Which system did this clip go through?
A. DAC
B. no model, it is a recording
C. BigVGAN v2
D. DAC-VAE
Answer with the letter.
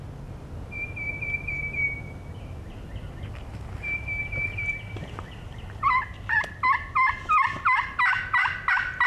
B